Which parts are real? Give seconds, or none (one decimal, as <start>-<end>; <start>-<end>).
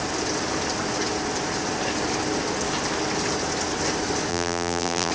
0.0-4.3